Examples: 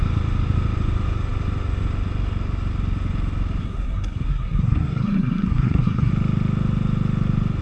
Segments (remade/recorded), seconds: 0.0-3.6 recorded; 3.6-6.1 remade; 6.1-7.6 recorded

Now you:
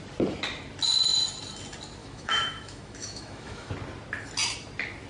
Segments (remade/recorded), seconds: 0.0-2.0 recorded; 2.0-3.7 remade; 3.7-5.1 recorded

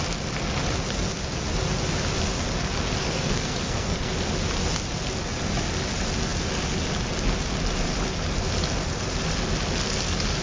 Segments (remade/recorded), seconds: 0.0-3.0 recorded; 3.0-4.1 remade; 4.1-10.4 recorded

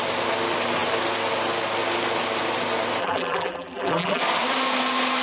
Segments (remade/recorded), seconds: 0.0-3.0 recorded; 3.0-4.2 remade; 4.2-5.2 recorded

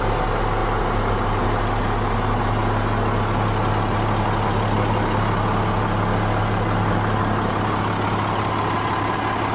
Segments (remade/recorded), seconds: 0.0-9.5 recorded

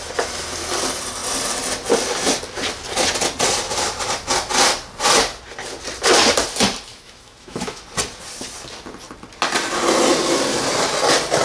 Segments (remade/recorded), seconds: 0.0-6.9 recorded; 6.9-7.8 remade; 7.8-11.4 recorded

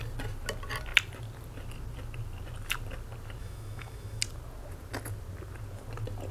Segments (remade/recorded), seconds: 0.0-3.4 recorded; 3.4-4.2 remade; 4.2-6.3 recorded